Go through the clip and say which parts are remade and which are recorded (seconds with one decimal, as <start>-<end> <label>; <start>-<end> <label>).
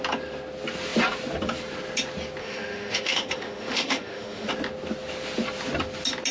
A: 0.0-2.4 recorded; 2.4-4.5 remade; 4.5-6.3 recorded